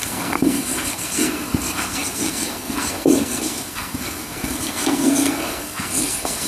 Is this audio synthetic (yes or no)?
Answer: yes